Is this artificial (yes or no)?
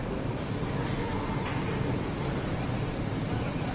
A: yes